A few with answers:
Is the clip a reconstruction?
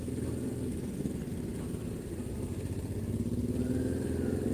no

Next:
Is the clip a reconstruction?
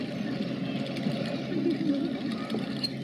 no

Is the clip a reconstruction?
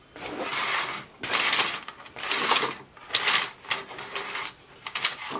no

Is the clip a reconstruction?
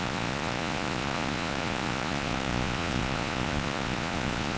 yes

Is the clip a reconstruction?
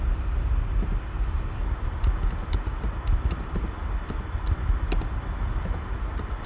no